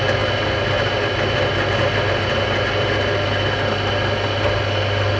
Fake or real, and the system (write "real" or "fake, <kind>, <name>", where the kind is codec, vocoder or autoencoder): real